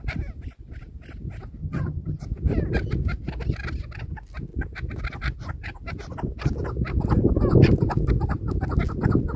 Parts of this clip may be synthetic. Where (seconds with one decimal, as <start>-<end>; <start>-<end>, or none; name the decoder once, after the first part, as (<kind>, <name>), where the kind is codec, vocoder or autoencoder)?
1.6-2.2 (vocoder, HiFi-GAN)